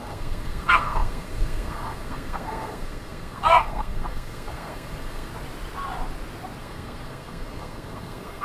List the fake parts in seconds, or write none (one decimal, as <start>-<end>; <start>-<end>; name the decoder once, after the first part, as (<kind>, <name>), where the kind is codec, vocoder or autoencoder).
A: 0.0-5.3 (codec, SNAC); 6.6-8.4